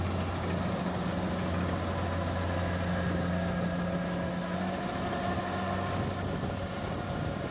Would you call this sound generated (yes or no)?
no